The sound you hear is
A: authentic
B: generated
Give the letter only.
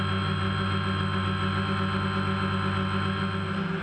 A